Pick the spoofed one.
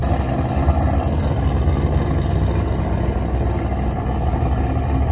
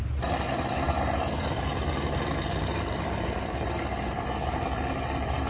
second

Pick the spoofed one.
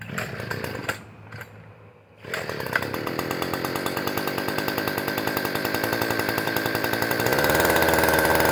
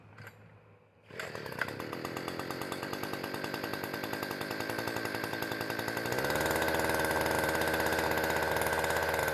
first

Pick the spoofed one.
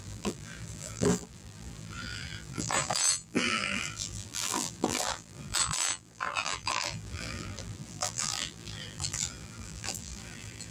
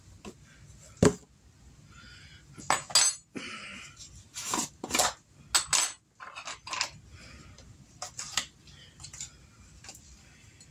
first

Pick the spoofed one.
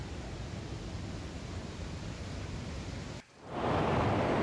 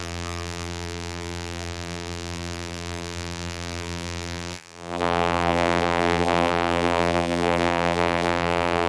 second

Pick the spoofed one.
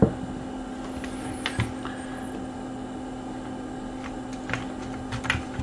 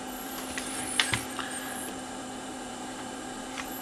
second